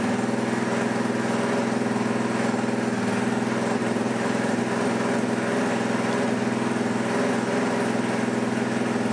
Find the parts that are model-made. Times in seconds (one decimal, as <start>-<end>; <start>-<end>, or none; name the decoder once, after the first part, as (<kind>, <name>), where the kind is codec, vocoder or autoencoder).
3.8-4.6 (vocoder, BigVGAN v2)